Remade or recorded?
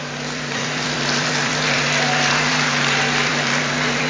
remade